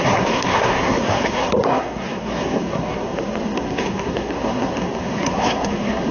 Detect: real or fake fake